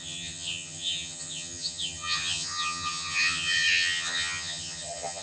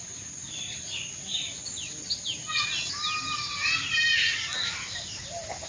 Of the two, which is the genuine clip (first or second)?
second